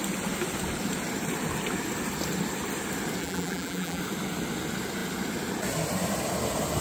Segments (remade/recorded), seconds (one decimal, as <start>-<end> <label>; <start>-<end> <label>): 0.0-3.2 recorded; 3.2-4.0 remade; 4.0-6.8 recorded